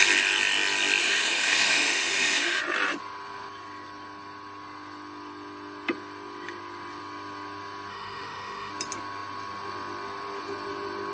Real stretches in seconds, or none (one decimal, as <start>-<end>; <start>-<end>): 0.0-1.0; 2.6-7.9; 8.7-11.1